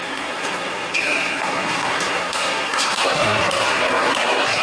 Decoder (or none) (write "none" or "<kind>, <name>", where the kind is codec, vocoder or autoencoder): codec, SNAC